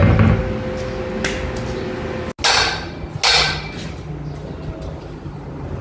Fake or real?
real